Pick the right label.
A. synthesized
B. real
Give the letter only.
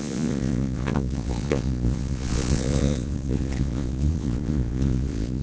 A